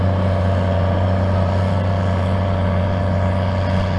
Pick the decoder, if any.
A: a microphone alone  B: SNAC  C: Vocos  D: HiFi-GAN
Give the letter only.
A